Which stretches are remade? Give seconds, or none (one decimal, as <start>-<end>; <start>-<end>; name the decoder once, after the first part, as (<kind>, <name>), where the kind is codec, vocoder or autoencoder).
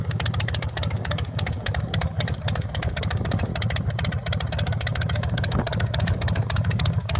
0.0-3.5 (codec, DAC); 4.5-7.2